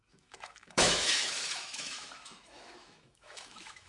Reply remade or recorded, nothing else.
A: remade